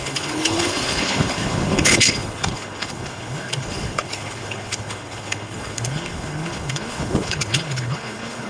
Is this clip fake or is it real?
fake